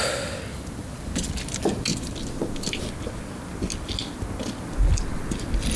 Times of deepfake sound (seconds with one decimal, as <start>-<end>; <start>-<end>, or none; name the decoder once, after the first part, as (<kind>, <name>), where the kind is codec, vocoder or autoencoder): none